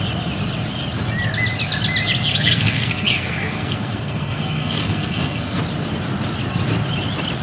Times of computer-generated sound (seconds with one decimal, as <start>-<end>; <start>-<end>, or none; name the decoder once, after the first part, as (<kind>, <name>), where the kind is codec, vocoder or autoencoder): 2.3-5.6 (codec, SNAC)